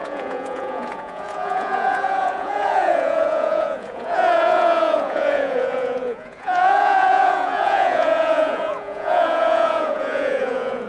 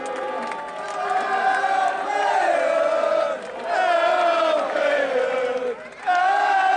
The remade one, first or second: first